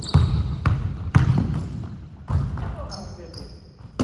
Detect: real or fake real